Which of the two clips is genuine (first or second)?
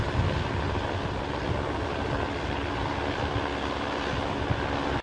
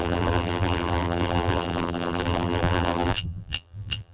first